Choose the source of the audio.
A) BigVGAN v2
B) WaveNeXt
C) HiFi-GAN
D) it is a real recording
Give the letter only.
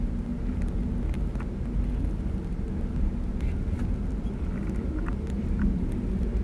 D